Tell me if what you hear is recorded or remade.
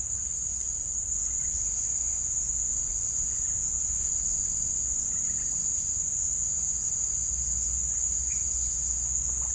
remade